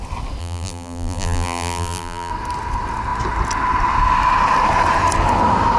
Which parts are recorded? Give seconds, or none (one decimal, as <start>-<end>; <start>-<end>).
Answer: 0.0-0.4; 2.3-5.8